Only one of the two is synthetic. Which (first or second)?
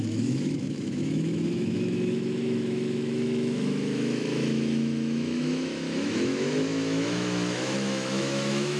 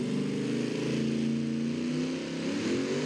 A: first